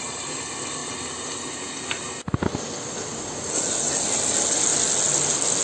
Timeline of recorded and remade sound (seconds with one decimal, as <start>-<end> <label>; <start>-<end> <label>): 0.0-5.6 recorded